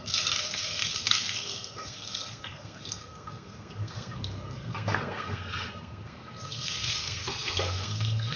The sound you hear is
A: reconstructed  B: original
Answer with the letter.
A